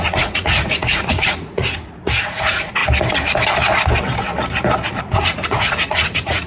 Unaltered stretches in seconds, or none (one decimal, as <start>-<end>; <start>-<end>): 2.8-5.0